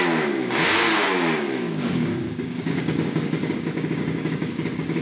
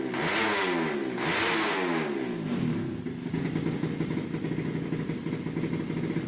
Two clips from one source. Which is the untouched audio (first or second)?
second